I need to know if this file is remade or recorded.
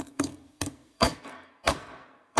remade